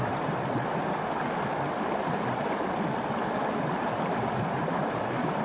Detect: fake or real real